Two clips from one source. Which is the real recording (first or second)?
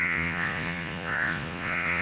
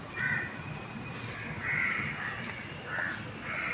second